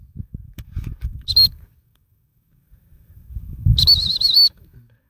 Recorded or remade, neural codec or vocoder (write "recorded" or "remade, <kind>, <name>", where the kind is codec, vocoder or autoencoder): remade, codec, DAC